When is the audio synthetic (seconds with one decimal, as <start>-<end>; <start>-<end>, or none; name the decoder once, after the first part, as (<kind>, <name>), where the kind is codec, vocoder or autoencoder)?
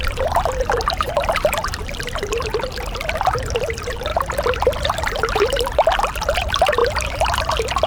0.0-2.5 (vocoder, BigVGAN v2); 3.6-4.1; 4.8-7.9